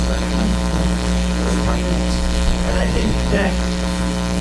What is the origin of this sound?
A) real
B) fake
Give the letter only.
B